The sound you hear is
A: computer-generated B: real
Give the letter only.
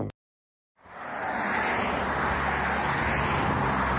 B